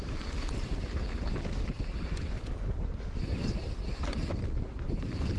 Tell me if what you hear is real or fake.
fake